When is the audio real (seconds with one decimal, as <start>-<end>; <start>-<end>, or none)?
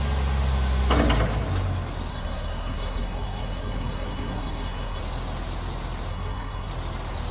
0.0-2.1; 5.0-6.1; 6.7-7.3